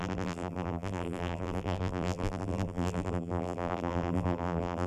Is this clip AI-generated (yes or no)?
yes